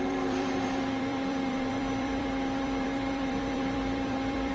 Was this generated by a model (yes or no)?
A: yes